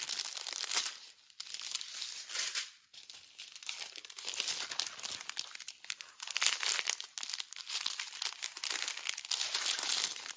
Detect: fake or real real